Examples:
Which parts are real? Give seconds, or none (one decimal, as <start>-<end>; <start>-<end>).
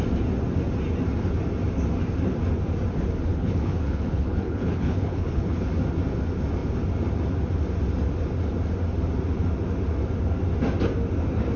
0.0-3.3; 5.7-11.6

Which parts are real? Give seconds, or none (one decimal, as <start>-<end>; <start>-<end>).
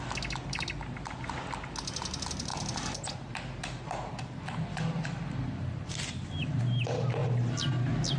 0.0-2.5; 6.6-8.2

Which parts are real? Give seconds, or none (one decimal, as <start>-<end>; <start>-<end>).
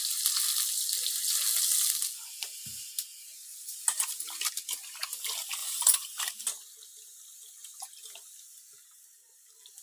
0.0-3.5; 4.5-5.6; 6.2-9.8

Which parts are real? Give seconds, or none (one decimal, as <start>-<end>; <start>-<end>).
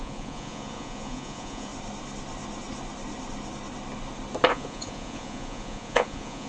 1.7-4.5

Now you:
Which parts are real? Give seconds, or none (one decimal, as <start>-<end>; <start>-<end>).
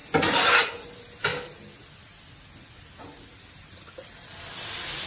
0.0-5.1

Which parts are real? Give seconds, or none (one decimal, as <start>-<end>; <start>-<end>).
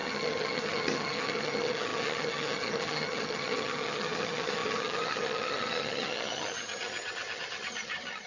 none